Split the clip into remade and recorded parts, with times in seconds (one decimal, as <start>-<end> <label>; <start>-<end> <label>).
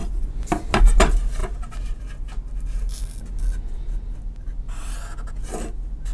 0.0-6.1 recorded